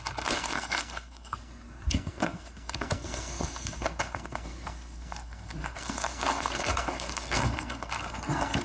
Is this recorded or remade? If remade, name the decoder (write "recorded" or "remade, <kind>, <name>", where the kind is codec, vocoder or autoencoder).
remade, codec, SNAC